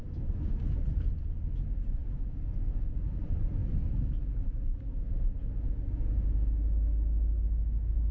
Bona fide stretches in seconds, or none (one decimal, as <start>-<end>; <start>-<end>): 0.0-8.1